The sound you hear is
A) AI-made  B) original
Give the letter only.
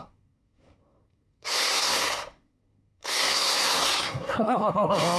A